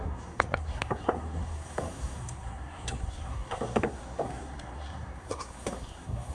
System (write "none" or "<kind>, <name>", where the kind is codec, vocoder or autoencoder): codec, SNAC